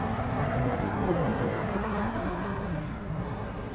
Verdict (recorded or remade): remade